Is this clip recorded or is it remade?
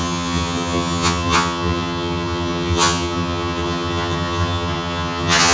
remade